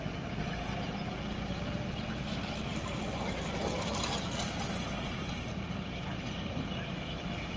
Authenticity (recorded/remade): recorded